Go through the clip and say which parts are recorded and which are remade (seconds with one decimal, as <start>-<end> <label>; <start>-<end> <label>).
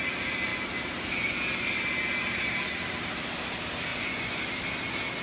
0.0-3.9 recorded; 3.9-4.4 remade; 4.4-5.2 recorded